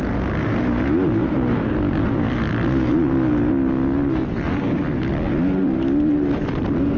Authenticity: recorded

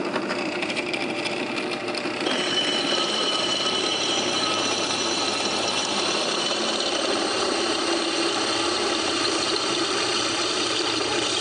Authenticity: remade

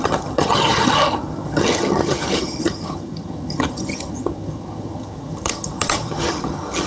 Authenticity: remade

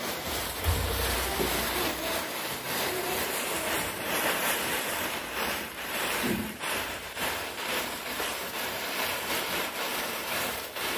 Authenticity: remade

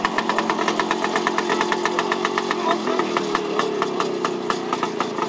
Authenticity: recorded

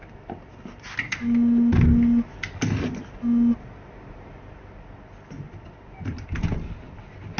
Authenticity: recorded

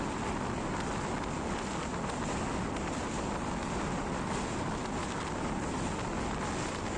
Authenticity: recorded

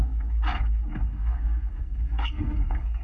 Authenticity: remade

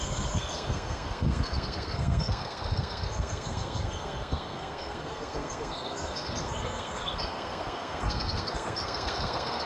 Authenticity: remade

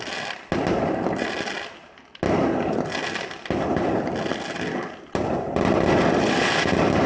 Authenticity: recorded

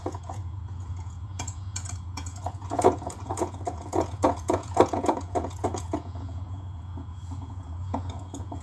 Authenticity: remade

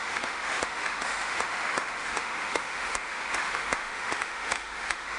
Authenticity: remade